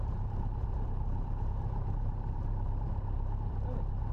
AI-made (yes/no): yes